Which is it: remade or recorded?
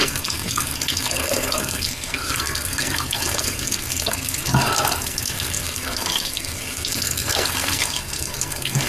remade